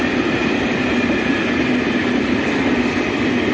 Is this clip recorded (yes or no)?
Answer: yes